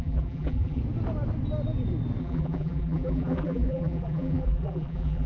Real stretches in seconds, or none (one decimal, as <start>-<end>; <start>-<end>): 0.8-2.2